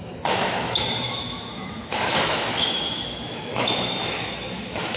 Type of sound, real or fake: fake